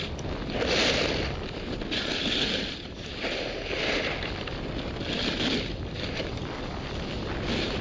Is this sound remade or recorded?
recorded